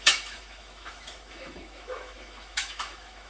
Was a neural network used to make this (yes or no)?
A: yes